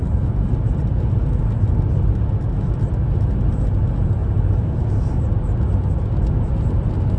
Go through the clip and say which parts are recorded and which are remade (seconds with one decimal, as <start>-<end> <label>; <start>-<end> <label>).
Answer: 0.0-7.2 recorded